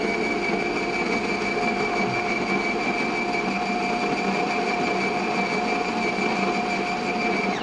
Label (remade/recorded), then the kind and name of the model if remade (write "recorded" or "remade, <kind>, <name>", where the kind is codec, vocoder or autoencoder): recorded